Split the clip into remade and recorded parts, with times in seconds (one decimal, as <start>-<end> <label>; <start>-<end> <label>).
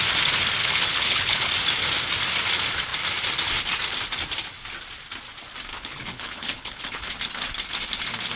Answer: 0.0-0.6 recorded; 0.6-1.5 remade; 1.5-5.7 recorded; 5.7-7.1 remade; 7.1-8.4 recorded